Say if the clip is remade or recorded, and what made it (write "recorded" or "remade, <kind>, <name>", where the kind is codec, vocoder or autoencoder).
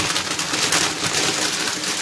recorded